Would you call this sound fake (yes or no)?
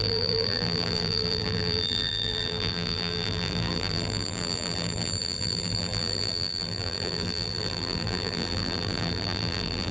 yes